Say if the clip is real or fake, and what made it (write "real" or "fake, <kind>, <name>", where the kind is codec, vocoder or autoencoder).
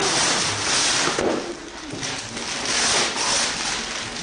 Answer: real